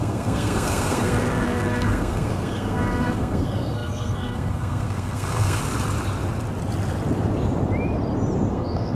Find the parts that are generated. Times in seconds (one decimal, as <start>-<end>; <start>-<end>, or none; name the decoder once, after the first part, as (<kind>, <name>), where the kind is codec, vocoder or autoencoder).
0.0-5.6 (codec, SNAC); 8.5-8.9